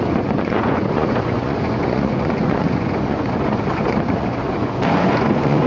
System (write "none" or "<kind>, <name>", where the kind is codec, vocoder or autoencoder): vocoder, Vocos